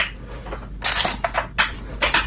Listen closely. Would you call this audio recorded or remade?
recorded